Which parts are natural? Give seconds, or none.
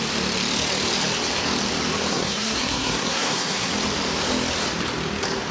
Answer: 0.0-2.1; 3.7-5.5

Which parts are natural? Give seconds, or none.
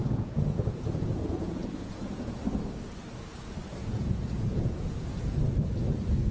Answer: 2.4-3.8; 5.0-6.3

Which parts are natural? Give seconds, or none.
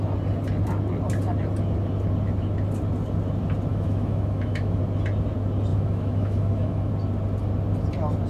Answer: 0.0-3.7; 4.8-5.7; 6.9-8.3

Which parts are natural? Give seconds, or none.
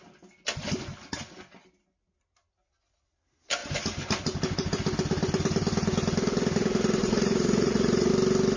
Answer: 0.0-7.0; 8.1-8.6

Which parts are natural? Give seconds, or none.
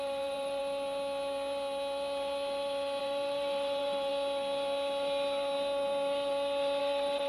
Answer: 0.6-3.0; 4.1-6.8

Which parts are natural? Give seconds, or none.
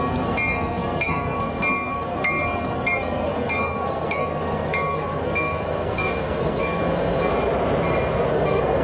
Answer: 7.3-8.3